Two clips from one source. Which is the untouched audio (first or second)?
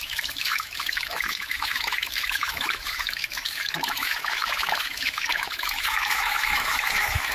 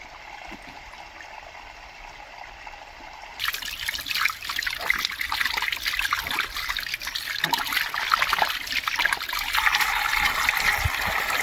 second